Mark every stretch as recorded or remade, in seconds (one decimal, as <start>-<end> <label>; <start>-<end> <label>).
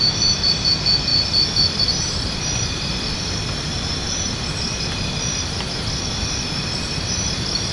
0.0-7.7 recorded